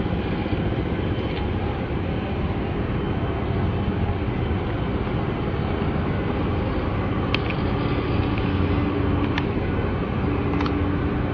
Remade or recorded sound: recorded